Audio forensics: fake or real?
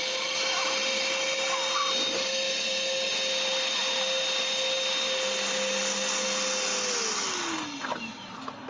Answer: real